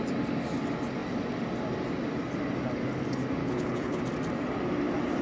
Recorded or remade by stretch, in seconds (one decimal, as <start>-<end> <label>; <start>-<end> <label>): 0.0-3.4 recorded; 3.4-4.0 remade; 4.0-5.2 recorded